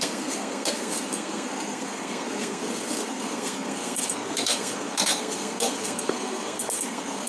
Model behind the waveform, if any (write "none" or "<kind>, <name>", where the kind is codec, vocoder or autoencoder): codec, SNAC